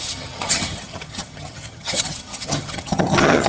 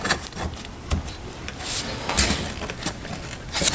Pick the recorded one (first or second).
second